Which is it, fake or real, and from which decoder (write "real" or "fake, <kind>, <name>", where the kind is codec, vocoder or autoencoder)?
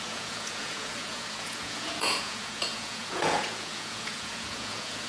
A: fake, vocoder, Vocos